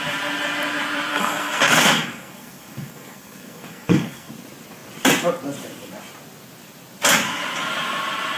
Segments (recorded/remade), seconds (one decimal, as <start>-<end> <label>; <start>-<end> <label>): 0.0-1.1 recorded; 1.1-4.3 remade; 4.3-8.4 recorded